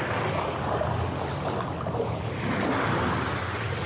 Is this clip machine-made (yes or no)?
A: no